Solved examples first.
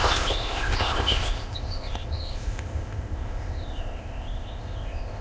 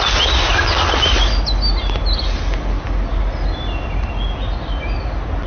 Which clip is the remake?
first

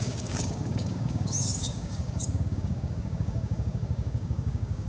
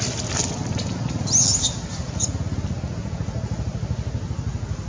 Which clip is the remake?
first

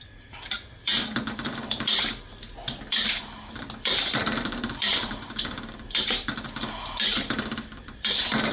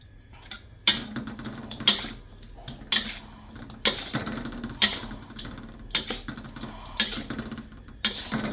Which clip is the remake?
first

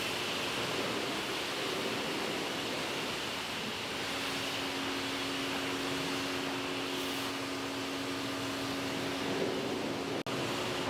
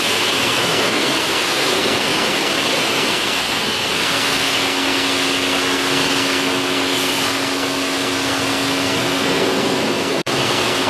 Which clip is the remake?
second